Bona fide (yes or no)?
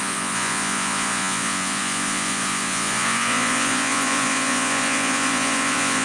no